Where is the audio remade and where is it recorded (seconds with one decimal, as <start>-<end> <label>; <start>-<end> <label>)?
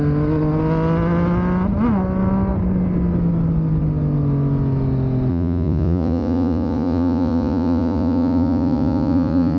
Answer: 0.0-5.3 recorded; 5.3-9.6 remade